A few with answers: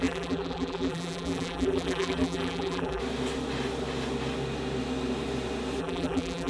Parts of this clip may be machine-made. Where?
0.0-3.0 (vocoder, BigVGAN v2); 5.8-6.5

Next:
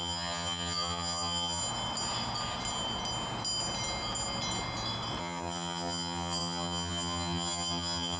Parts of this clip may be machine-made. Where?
0.0-1.6 (vocoder, HiFi-GAN); 5.2-8.2

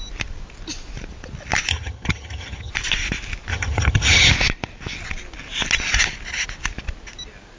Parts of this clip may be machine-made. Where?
1.7-2.7 (vocoder, HiFi-GAN); 3.5-4.3

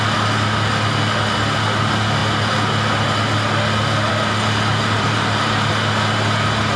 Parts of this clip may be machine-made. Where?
4.7-5.7 (vocoder, BigVGAN v2)

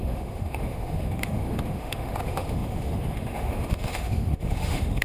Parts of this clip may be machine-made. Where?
0.0-5.0 (autoencoder, DAC-VAE)